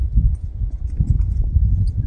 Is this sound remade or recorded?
recorded